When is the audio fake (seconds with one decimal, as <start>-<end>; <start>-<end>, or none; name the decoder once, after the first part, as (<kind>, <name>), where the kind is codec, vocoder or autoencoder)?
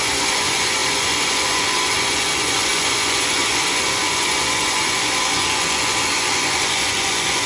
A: 0.0-7.5 (vocoder, Vocos)